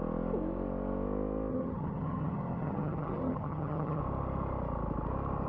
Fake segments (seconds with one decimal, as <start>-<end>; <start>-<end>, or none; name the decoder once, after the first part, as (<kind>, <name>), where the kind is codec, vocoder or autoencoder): 1.5-4.0 (vocoder, HiFi-GAN)